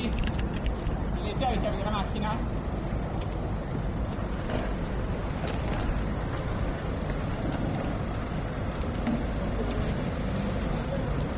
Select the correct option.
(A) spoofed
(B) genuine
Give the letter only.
B